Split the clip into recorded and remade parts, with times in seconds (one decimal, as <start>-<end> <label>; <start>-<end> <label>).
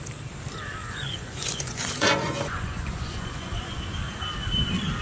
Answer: 0.0-0.8 recorded; 0.8-3.8 remade; 3.8-5.0 recorded